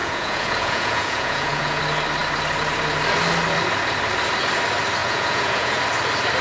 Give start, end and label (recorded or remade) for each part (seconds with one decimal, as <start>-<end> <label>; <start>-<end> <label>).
0.0-1.8 remade; 1.8-5.0 recorded; 5.0-5.8 remade; 5.8-6.4 recorded